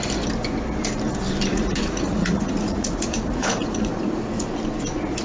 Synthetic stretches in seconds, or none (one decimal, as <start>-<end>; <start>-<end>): 1.5-4.5

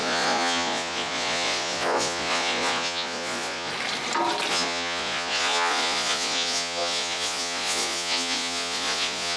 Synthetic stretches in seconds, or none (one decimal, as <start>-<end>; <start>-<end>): 0.0-3.7; 4.5-9.4

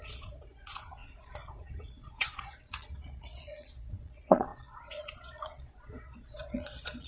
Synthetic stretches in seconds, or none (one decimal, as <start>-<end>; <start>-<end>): 0.0-7.1

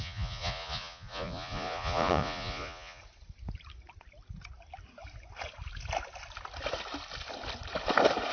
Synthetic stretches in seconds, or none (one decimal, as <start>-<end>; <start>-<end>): 0.0-3.0

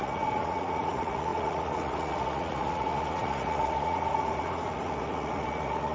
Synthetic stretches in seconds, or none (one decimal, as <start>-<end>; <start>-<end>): 0.0-5.9

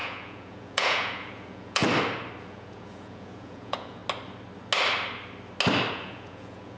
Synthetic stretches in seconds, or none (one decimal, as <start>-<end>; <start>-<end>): 0.0-1.8; 2.4-4.0; 5.9-6.8

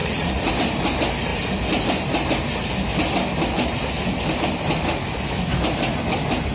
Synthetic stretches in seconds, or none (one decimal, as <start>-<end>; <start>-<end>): 0.0-0.5